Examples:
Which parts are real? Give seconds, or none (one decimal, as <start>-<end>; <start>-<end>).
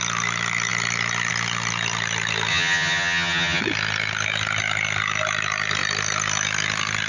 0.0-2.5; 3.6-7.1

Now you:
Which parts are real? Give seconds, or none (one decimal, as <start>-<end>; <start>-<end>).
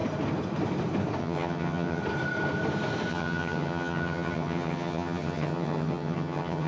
0.0-1.2; 2.0-3.1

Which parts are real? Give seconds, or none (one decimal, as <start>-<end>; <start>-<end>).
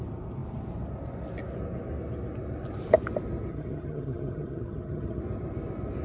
0.0-3.5; 5.2-6.0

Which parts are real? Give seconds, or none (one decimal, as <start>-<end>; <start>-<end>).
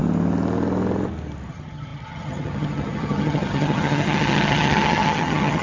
0.0-1.5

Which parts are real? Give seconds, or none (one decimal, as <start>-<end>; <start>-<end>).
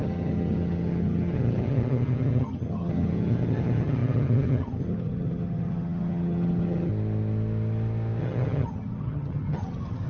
6.9-8.2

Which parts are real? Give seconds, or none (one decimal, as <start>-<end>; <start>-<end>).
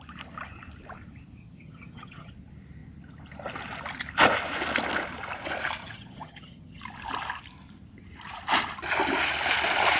0.0-1.4; 2.3-5.8; 6.8-10.0